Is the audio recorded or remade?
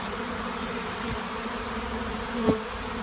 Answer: remade